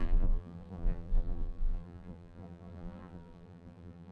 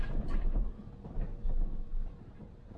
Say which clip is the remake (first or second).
first